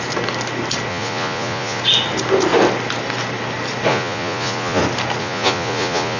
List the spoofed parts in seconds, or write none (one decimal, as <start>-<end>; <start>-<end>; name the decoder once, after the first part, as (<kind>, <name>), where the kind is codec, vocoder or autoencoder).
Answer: 0.9-1.8 (vocoder, Vocos); 3.9-4.8; 5.2-6.2